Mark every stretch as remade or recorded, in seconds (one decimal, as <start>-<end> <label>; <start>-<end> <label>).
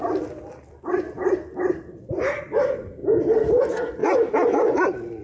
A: 0.0-5.2 recorded